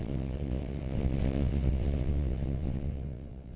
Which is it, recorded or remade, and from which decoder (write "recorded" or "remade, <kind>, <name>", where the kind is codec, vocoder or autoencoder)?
remade, vocoder, WaveNeXt